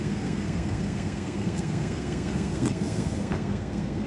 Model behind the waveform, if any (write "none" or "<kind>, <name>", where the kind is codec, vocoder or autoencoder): codec, SNAC